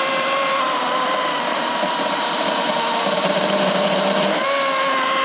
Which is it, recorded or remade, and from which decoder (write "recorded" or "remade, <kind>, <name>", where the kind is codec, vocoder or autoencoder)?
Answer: remade, vocoder, BigVGAN v2